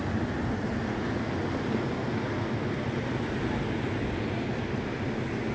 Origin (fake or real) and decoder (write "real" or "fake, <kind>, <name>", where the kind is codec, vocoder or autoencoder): real